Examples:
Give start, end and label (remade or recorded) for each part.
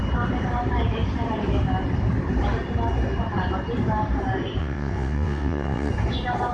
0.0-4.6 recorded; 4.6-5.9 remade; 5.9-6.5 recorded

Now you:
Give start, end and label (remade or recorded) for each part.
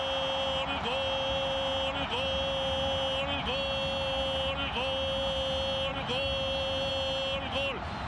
0.0-8.1 recorded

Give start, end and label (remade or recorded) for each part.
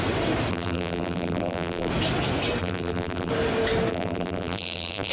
0.0-0.5 recorded; 0.5-1.9 remade; 1.9-2.6 recorded; 2.6-3.3 remade; 3.3-3.9 recorded; 3.9-5.1 remade